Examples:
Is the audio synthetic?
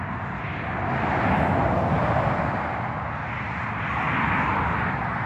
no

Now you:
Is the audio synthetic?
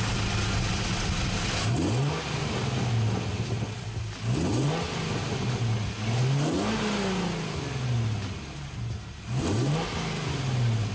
no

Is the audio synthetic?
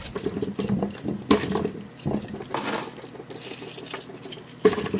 no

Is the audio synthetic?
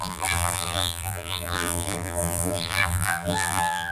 yes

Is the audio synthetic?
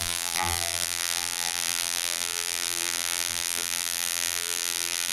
yes